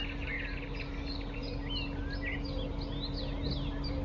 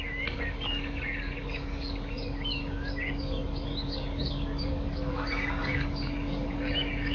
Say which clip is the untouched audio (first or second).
first